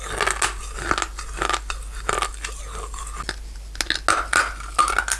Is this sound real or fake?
real